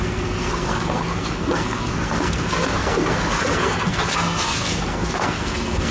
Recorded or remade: remade